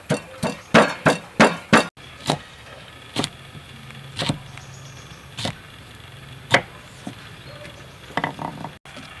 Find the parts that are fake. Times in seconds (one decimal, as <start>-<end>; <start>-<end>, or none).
2.3-2.9